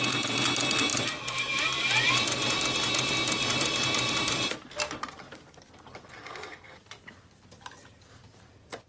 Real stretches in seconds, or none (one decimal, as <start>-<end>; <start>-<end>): 0.0-0.9; 5.8-8.9